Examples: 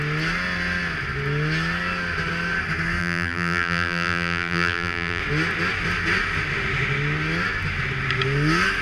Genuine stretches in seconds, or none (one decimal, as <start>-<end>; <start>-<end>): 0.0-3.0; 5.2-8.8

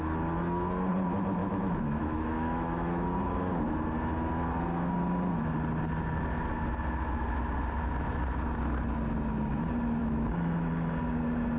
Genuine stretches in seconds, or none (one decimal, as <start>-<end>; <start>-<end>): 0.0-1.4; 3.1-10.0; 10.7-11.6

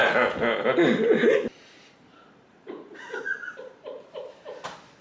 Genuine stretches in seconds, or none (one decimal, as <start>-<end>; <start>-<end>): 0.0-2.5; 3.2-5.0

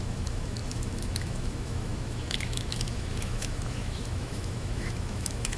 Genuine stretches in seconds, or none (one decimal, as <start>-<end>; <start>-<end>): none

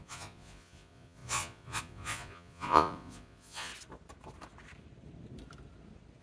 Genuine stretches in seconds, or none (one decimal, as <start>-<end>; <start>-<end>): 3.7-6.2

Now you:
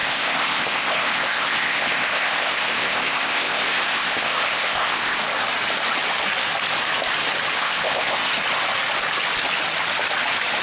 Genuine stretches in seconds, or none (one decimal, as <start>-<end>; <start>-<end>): 5.2-7.6; 8.3-10.6